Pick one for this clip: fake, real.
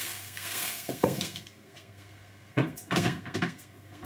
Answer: fake